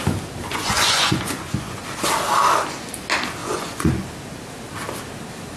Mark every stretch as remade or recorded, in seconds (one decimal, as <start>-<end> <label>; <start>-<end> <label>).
0.0-0.5 recorded; 0.5-1.8 remade; 1.8-3.4 recorded; 3.4-4.1 remade; 4.1-5.6 recorded